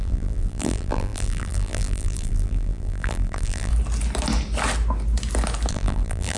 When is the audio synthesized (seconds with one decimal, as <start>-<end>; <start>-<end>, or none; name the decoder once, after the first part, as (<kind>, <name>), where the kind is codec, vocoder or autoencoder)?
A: 0.0-3.7 (vocoder, BigVGAN v2); 5.7-6.4